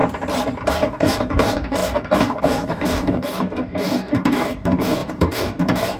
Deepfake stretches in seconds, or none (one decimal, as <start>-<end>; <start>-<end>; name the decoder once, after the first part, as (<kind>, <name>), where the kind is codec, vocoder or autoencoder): 0.7-6.0 (codec, DAC)